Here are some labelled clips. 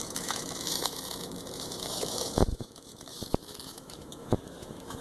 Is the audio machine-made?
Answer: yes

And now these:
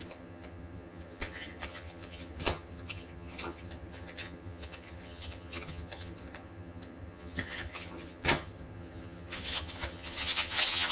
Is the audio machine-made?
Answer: yes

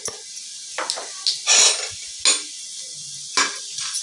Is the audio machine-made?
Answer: no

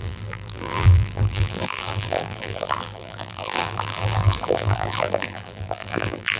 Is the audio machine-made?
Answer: yes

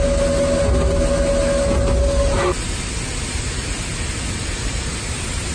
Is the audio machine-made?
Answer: no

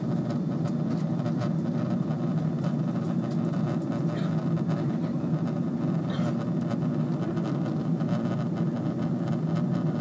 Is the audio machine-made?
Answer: no